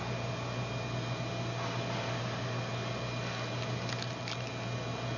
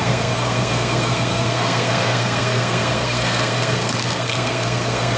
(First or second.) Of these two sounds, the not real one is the second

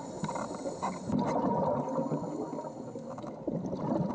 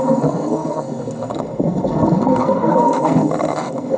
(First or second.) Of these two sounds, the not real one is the second